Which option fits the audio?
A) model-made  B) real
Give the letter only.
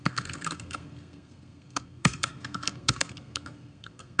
A